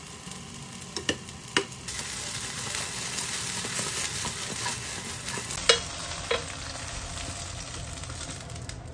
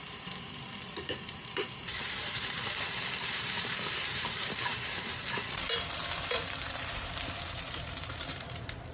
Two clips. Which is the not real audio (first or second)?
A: second